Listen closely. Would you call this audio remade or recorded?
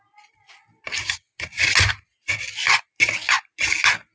recorded